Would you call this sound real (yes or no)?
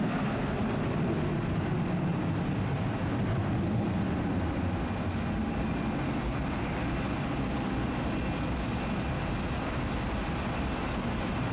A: yes